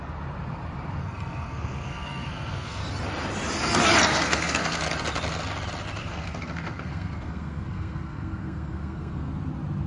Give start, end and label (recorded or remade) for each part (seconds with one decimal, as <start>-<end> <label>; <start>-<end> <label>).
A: 0.0-1.0 recorded; 1.0-2.8 remade; 2.8-4.1 recorded; 4.1-4.8 remade; 4.8-6.0 recorded; 6.0-9.3 remade; 9.3-9.9 recorded